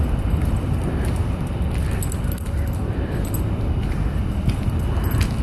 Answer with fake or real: real